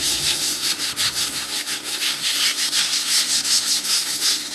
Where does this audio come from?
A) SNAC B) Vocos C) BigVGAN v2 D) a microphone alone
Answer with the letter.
A